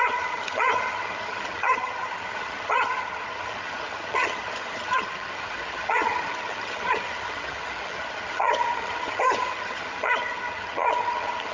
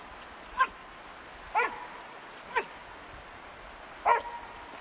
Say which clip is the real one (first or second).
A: second